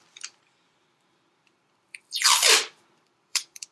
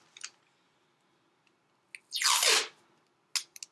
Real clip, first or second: second